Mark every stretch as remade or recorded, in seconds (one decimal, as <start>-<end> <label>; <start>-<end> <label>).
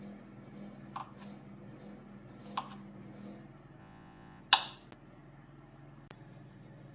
0.0-3.8 recorded; 3.8-4.4 remade; 4.4-6.9 recorded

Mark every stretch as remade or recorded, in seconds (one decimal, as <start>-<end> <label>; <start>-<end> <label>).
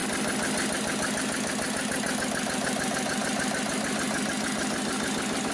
0.0-5.5 recorded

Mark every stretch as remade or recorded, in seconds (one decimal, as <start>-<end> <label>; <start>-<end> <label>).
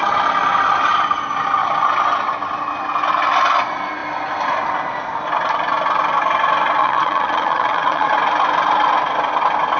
0.0-6.8 recorded; 6.8-8.1 remade; 8.1-9.8 recorded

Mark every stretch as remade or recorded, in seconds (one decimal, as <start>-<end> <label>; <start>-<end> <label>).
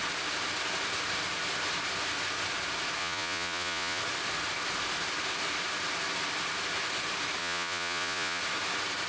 0.0-3.0 recorded; 3.0-4.0 remade; 4.0-7.4 recorded; 7.4-8.4 remade; 8.4-9.1 recorded